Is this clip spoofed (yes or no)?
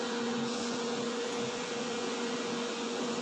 yes